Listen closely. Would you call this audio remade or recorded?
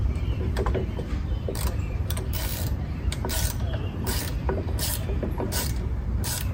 remade